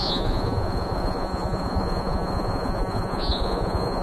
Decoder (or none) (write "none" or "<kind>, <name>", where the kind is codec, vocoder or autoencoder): vocoder, Vocos